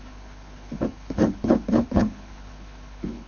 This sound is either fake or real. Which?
fake